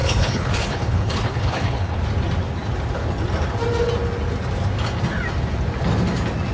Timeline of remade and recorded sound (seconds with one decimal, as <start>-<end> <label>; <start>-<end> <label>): 0.0-2.0 remade; 2.0-6.5 recorded